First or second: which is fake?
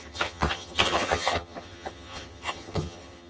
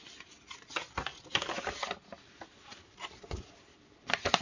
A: first